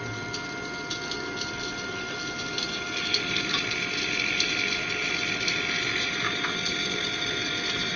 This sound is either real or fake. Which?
real